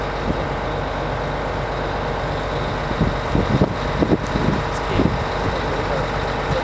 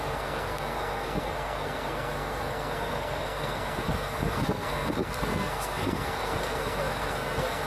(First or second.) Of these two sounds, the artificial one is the second